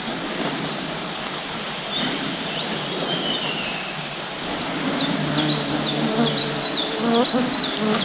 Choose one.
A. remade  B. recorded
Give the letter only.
B